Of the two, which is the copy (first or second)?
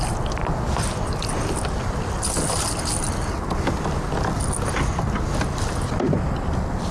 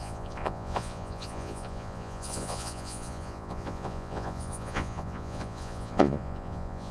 second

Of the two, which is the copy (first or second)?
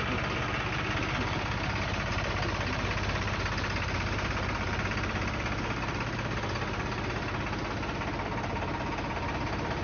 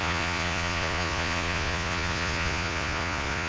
second